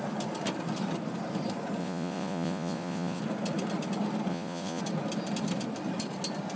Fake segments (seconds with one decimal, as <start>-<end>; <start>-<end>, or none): 1.8-3.2; 4.3-4.8